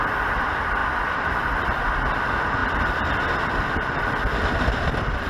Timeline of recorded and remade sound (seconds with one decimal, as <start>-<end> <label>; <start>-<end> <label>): 0.0-0.8 recorded; 0.8-1.8 remade; 1.8-2.6 recorded; 2.6-5.3 remade